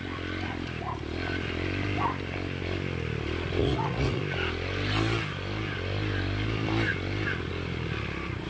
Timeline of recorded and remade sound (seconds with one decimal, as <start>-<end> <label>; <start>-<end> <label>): 0.0-3.6 recorded; 3.6-4.2 remade; 4.2-8.5 recorded